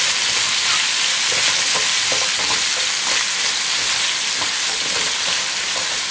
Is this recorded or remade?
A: recorded